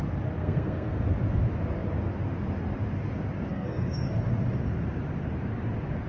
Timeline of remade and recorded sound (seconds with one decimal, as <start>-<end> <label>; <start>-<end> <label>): 0.0-0.4 recorded; 0.4-1.0 remade; 1.0-3.5 recorded; 3.5-4.1 remade; 4.1-6.1 recorded